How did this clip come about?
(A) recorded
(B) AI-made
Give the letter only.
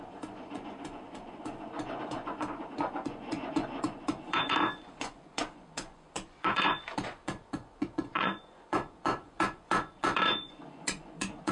B